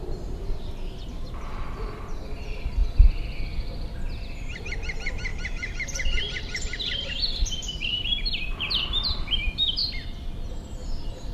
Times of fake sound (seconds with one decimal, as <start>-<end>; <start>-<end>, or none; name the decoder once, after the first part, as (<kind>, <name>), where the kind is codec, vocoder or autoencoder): 0.0-2.8 (vocoder, BigVGAN v2); 4.2-9.8; 10.7-11.3